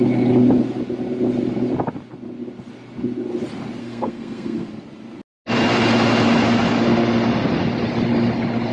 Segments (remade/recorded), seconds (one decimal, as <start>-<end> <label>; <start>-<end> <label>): 0.0-3.8 recorded; 3.8-4.7 remade; 4.7-8.7 recorded